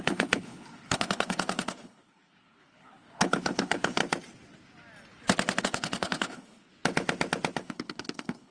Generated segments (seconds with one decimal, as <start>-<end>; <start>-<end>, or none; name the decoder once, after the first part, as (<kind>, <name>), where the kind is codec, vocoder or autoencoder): 0.0-4.0 (codec, HILCodec); 5.6-6.7; 7.6-8.5